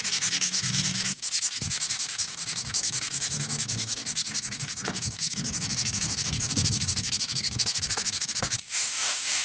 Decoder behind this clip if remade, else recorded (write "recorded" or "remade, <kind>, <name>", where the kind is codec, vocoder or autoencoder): remade, codec, DAC